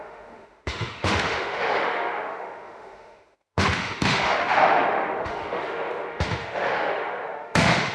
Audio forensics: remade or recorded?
remade